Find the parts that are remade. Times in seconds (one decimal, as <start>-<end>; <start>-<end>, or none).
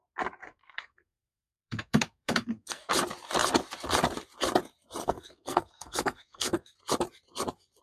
0.4-2.9; 5.0-6.8